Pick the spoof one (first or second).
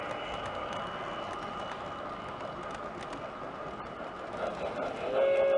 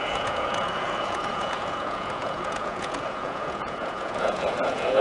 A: second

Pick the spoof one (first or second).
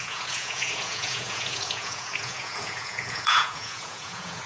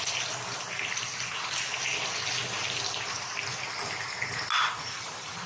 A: first